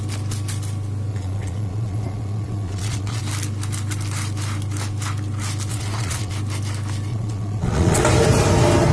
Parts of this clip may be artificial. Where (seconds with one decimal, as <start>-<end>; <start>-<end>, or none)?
1.1-3.2; 5.7-6.3; 7.1-8.0